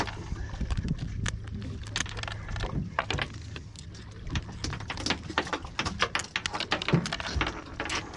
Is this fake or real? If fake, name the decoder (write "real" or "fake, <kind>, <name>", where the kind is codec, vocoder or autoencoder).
real